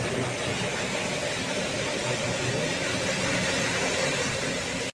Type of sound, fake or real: real